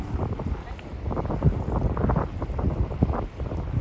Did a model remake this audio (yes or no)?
no